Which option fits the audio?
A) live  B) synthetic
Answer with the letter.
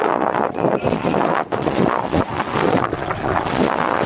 B